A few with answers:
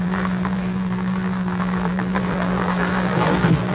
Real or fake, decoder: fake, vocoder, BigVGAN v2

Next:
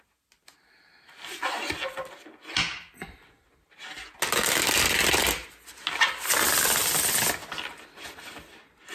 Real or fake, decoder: real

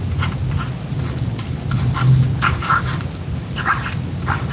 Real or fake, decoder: fake, vocoder, BigVGAN v2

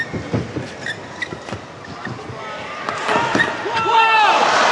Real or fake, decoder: real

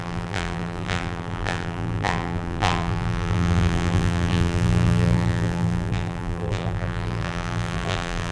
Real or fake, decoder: fake, vocoder, BigVGAN v2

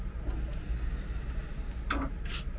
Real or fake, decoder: real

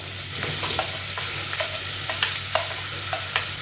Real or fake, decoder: real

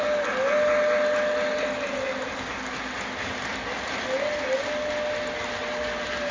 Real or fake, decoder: real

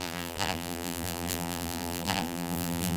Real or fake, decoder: fake, vocoder, BigVGAN v2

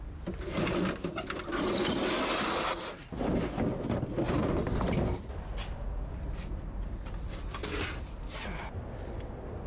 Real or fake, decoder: real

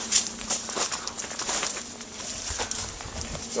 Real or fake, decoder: fake, vocoder, BigVGAN v2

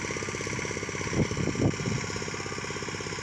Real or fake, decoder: real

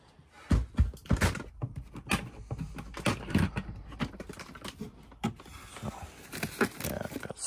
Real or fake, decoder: real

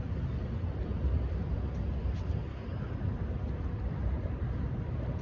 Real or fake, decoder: fake, vocoder, BigVGAN v2